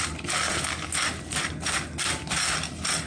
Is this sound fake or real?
real